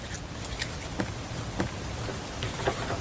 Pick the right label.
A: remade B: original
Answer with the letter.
B